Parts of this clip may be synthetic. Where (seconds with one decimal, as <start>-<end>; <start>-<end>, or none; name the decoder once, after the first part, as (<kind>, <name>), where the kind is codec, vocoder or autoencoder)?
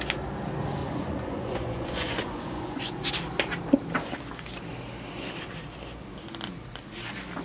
0.8-2.9 (vocoder, Vocos)